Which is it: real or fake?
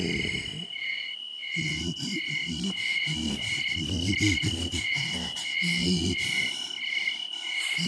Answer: real